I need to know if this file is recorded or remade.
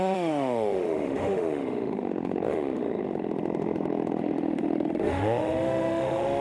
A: remade